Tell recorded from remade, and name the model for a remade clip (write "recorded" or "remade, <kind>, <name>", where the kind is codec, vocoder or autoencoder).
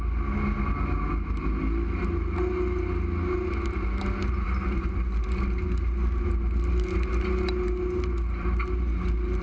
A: recorded